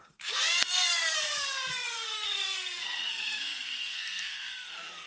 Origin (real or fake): fake